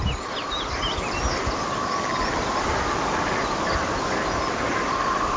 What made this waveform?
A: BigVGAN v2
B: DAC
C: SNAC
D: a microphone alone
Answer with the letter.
D